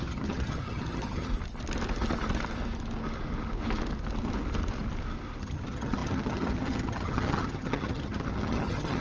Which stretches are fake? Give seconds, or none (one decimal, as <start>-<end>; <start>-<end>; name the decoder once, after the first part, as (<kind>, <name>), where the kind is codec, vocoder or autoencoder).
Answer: 0.0-1.3 (vocoder, HiFi-GAN); 5.4-9.0